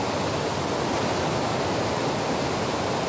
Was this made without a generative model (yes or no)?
yes